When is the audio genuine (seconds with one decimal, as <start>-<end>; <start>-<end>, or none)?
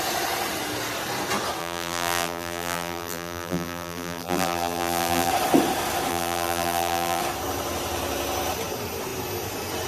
0.0-1.6; 5.3-6.1; 7.2-9.9